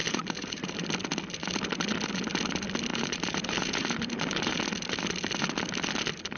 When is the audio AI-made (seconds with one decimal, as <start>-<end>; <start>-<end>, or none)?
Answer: 0.0-0.8; 2.9-4.6